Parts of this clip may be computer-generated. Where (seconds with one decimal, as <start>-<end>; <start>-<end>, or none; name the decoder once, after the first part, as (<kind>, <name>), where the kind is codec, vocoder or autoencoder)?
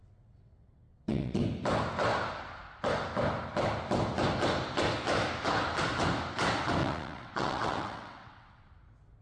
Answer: 0.0-1.4 (vocoder, WaveNeXt); 6.8-8.7